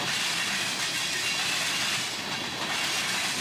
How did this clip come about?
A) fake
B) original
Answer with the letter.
B